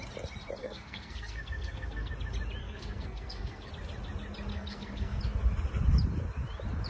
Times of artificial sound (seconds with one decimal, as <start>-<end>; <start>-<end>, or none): 0.6-2.1; 2.6-3.7; 4.5-5.2

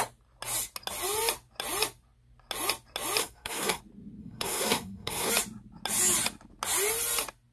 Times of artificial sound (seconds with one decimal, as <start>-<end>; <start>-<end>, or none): 3.2-3.8; 4.2-5.3

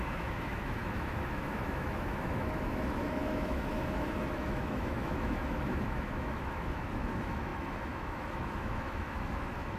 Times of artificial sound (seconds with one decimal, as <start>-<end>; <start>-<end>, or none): 0.0-9.8

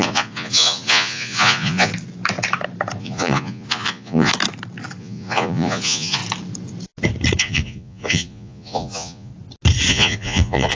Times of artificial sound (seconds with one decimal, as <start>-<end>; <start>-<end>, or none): 0.0-1.9; 3.0-4.3; 5.0-6.2; 7.4-9.3; 9.9-10.7

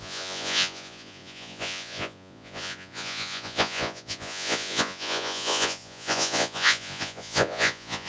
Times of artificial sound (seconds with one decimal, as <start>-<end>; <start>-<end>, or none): 0.0-8.1

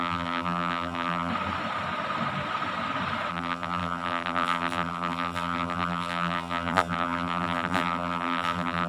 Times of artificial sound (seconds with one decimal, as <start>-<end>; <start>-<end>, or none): 0.0-1.3; 3.3-8.9

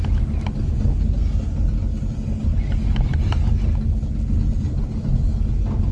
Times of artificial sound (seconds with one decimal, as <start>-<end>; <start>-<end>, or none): none